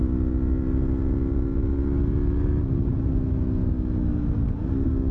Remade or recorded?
recorded